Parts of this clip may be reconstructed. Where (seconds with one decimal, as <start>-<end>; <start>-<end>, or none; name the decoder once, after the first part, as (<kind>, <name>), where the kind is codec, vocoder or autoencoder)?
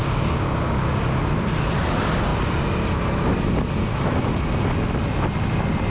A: 0.0-1.0 (codec, DAC)